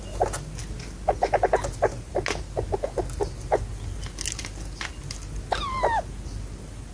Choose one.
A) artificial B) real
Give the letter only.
B